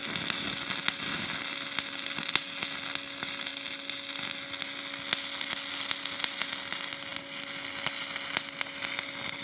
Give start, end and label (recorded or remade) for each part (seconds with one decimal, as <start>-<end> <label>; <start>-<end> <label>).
0.0-9.4 recorded